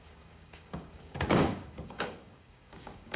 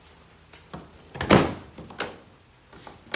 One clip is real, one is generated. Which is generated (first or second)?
first